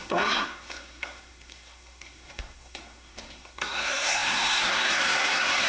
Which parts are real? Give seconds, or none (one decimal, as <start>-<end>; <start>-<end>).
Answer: none